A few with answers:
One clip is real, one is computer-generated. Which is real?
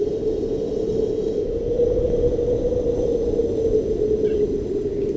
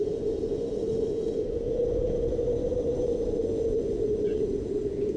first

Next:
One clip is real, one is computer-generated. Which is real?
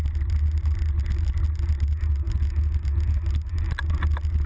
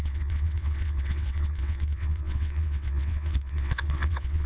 first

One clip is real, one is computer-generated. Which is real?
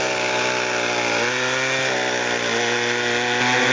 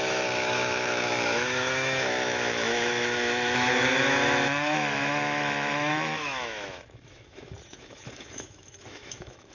first